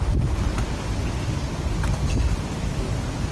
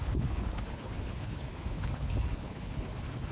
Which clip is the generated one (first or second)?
second